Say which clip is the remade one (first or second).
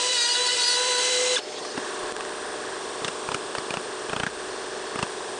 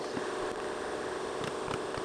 first